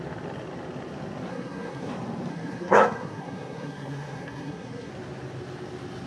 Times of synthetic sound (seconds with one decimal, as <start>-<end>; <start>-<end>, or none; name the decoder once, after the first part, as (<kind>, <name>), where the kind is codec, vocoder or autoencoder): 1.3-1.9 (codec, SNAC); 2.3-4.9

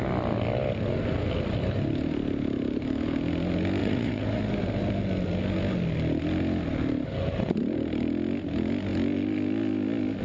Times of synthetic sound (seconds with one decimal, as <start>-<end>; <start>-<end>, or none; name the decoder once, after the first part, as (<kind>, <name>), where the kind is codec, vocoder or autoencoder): 3.8-4.4 (vocoder, Vocos)

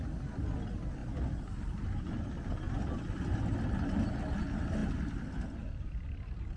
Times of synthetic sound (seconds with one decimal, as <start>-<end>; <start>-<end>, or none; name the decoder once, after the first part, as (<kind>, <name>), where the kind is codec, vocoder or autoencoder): 1.0-2.2 (vocoder, BigVGAN v2); 4.8-5.3

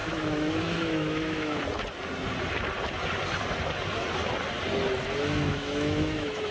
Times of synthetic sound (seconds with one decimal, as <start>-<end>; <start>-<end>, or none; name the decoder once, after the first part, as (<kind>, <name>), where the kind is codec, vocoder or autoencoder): 0.0-1.6 (autoencoder, DAC-VAE); 5.5-6.5

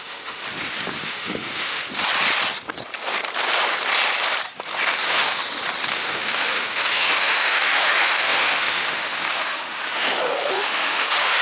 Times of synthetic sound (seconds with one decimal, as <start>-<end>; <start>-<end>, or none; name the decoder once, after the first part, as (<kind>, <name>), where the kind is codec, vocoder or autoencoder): 0.0-0.4 (autoencoder, DAC-VAE); 1.0-1.8; 5.0-5.4; 5.9-11.4

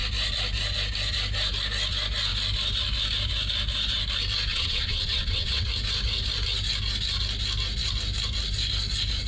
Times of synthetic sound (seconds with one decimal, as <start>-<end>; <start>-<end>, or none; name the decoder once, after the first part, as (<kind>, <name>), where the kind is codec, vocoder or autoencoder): 4.5-5.7 (vocoder, WaveNeXt)

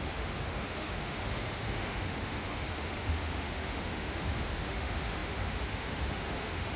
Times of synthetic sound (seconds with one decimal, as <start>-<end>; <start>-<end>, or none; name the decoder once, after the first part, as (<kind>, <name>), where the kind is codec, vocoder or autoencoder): 0.0-6.8 (autoencoder, DAC-VAE)